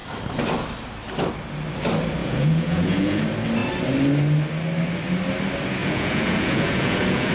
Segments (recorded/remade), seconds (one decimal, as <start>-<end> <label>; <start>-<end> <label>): 0.0-2.2 recorded; 2.2-3.2 remade; 3.2-5.8 recorded; 5.8-7.3 remade